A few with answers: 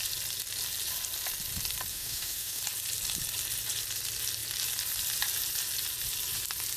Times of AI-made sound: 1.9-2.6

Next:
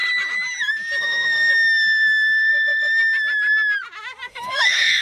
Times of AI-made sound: 1.0-1.5; 2.5-3.0; 4.3-5.0

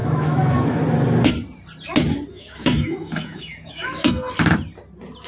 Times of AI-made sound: 0.0-0.8; 2.3-4.3

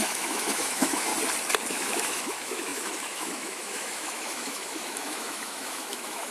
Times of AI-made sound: 0.0-1.1; 1.7-6.3